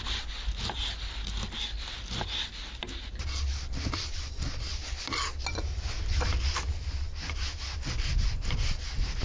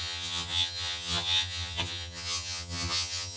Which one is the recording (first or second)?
first